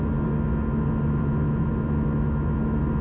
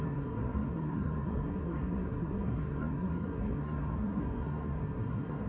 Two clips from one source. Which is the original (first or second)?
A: first